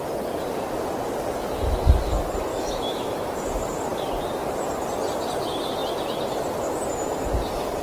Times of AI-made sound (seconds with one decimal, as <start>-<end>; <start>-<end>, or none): 2.5-3.1